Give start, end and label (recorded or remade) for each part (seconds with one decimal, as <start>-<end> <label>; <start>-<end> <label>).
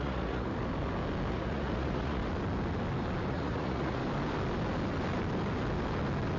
0.0-0.5 remade; 0.5-1.3 recorded; 1.3-2.2 remade; 2.2-3.3 recorded; 3.3-4.0 remade; 4.0-6.4 recorded